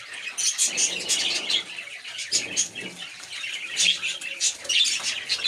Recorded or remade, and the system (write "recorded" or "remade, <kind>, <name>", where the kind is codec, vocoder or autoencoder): recorded